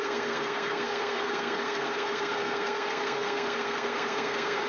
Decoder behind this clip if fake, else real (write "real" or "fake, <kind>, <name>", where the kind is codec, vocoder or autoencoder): fake, codec, SNAC